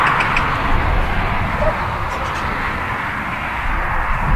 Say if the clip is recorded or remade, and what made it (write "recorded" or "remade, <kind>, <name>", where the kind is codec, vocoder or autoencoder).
recorded